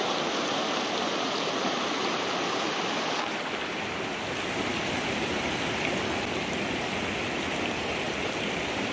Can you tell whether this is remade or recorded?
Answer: recorded